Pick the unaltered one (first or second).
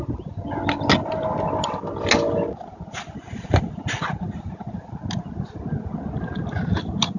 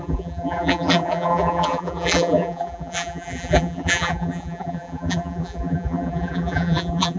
first